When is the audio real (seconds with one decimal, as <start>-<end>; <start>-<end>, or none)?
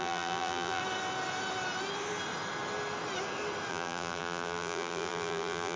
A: 0.8-3.7